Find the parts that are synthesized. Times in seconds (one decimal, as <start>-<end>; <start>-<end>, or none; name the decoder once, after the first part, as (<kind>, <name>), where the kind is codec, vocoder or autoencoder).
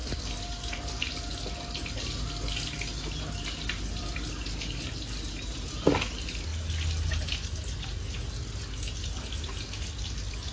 none